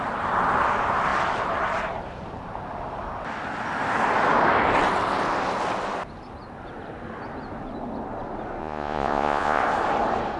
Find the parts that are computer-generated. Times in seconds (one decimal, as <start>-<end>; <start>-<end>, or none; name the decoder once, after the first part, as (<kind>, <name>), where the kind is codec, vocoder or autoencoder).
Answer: 8.6-9.6 (vocoder, Vocos)